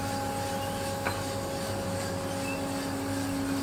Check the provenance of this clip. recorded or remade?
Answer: recorded